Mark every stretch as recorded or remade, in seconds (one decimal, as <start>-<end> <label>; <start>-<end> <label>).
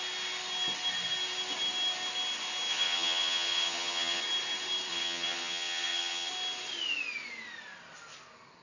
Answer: 0.0-2.7 recorded; 2.7-4.2 remade; 4.2-4.9 recorded; 4.9-6.3 remade; 6.3-8.6 recorded